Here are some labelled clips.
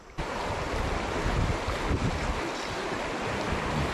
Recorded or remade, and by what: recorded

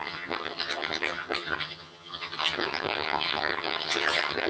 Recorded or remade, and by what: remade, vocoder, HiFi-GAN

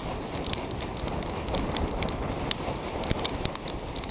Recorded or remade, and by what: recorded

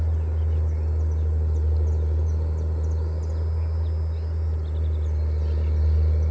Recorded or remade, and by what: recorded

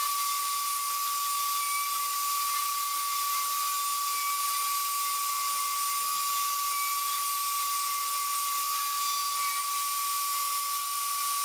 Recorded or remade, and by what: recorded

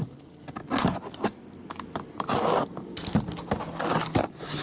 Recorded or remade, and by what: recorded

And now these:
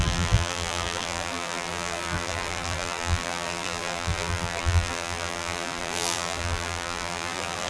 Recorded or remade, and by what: remade, vocoder, BigVGAN v2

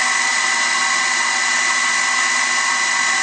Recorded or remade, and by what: recorded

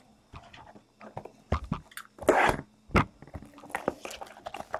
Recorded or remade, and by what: recorded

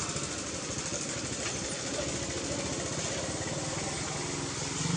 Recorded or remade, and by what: recorded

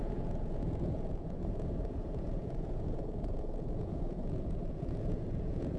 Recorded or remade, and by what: remade, vocoder, Vocos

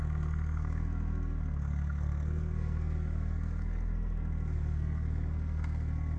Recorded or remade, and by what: remade, codec, SNAC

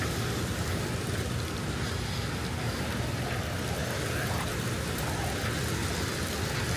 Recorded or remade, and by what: recorded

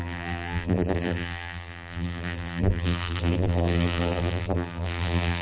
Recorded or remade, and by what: remade, vocoder, BigVGAN v2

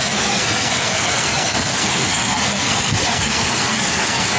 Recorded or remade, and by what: remade, codec, SNAC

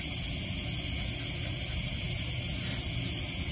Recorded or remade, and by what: recorded